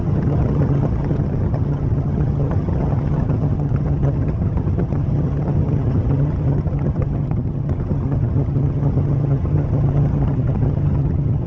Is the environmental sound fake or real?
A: fake